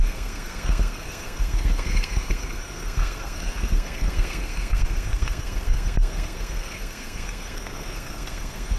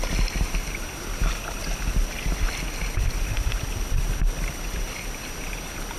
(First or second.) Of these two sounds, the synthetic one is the first